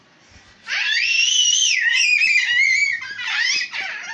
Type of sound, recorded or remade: recorded